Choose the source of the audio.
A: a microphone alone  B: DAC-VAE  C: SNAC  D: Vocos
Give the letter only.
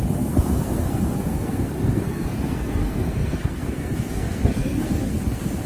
C